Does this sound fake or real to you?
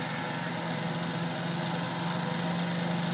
real